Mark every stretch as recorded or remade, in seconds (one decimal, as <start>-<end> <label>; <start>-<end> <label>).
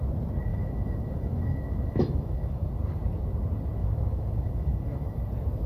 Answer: 0.0-0.5 recorded; 0.5-2.7 remade; 2.7-3.8 recorded; 3.8-5.2 remade; 5.2-5.7 recorded